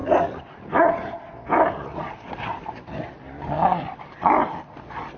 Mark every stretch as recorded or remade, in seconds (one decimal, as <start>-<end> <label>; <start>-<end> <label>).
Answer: 0.0-5.2 recorded